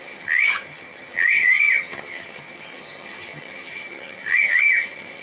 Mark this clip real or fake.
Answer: fake